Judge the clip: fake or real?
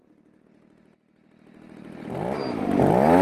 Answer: real